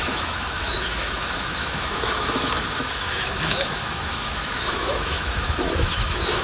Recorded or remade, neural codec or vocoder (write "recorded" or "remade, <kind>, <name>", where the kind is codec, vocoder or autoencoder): remade, autoencoder, DAC-VAE